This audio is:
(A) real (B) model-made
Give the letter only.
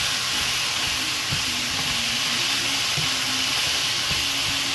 A